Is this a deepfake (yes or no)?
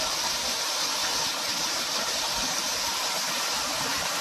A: yes